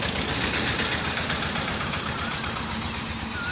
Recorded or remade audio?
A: remade